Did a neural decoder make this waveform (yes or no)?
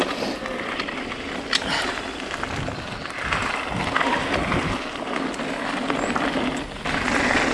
no